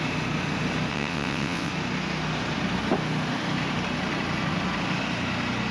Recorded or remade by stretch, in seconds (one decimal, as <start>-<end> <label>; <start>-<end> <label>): 0.0-0.9 recorded; 0.9-1.7 remade; 1.7-5.7 recorded